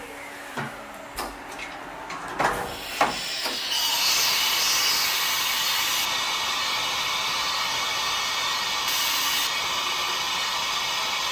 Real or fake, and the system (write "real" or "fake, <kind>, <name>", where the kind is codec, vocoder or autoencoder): real